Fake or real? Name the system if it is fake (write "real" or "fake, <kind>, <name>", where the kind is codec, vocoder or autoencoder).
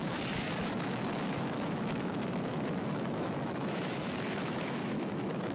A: fake, autoencoder, DAC-VAE